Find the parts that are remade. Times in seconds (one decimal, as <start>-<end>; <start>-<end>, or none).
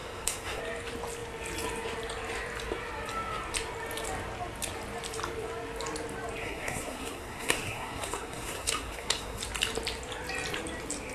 0.0-0.6; 6.4-9.4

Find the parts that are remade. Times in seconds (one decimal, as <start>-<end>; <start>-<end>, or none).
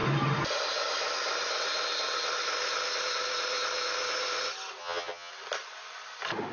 4.8-5.3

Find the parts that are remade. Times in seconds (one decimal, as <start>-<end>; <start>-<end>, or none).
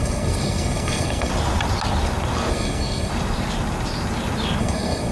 0.0-1.3; 2.5-3.1; 4.6-5.1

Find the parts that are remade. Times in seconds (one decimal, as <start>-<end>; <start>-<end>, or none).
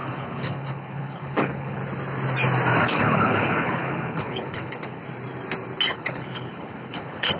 0.0-1.8; 2.8-5.0; 5.9-7.4